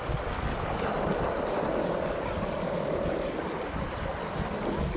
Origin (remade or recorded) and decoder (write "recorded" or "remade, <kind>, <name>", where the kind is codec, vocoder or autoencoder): recorded